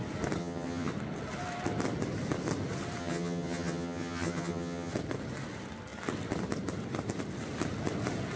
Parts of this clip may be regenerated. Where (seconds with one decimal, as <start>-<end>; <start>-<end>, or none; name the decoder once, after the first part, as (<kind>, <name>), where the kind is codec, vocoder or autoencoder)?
0.4-0.9 (vocoder, HiFi-GAN); 3.0-4.9